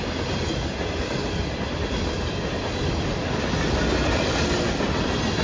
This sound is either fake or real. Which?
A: real